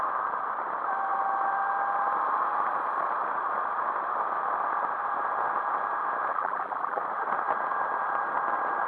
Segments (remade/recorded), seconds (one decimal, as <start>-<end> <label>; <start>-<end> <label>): 0.0-6.3 recorded; 6.3-7.0 remade; 7.0-8.9 recorded